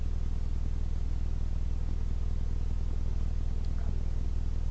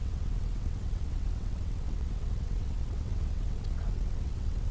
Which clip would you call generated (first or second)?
second